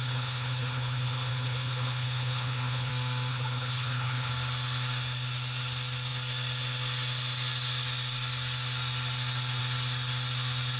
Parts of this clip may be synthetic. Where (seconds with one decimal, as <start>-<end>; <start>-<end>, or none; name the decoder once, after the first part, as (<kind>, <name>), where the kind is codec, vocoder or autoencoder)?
0.0-2.9 (codec, HILCodec); 3.3-4.3